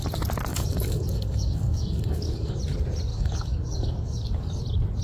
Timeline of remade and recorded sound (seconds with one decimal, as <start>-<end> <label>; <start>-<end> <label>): 0.0-0.5 recorded; 0.5-2.6 remade; 2.6-3.1 recorded; 3.1-4.6 remade; 4.6-5.0 recorded